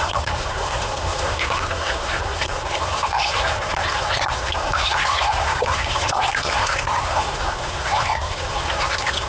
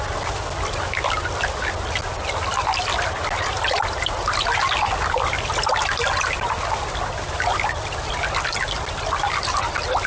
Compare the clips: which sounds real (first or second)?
second